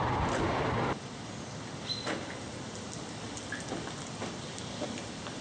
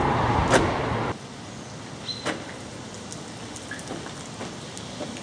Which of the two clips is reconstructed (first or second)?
first